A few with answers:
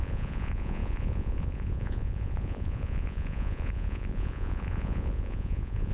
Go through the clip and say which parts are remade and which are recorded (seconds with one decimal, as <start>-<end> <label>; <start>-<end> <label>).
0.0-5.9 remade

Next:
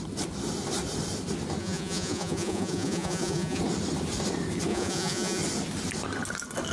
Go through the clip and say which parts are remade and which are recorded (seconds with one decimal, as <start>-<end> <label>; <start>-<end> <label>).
0.0-1.6 recorded; 1.6-3.6 remade; 3.6-4.7 recorded; 4.7-5.4 remade; 5.4-6.7 recorded

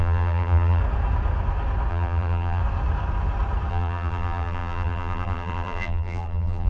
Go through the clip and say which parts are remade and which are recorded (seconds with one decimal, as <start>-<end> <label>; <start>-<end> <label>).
0.0-0.8 remade; 0.8-1.9 recorded; 1.9-2.6 remade; 2.6-3.7 recorded; 3.7-6.7 remade